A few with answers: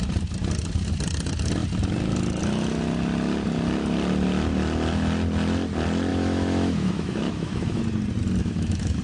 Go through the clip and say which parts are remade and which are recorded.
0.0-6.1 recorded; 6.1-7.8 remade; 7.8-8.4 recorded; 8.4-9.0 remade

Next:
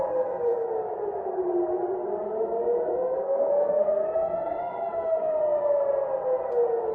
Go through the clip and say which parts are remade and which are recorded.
0.0-2.9 recorded; 2.9-5.4 remade; 5.4-6.9 recorded